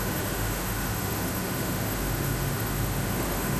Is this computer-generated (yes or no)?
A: yes